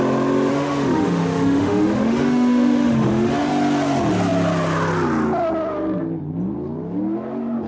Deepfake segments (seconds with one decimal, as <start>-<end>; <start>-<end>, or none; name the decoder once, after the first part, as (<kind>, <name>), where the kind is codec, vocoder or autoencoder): 0.5-3.5 (autoencoder, DAC-VAE)